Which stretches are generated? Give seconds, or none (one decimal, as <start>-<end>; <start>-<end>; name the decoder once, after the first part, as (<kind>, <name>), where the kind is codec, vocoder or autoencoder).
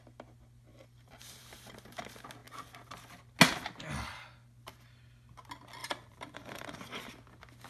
0.7-1.4 (vocoder, BigVGAN v2); 5.8-7.1